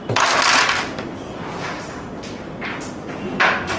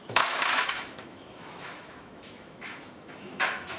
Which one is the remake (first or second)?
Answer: second